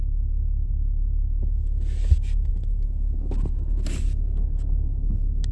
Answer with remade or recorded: recorded